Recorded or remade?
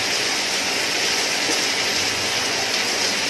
remade